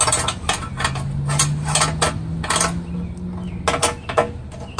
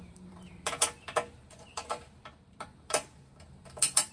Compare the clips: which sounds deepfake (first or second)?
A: second